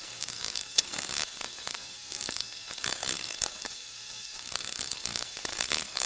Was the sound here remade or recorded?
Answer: remade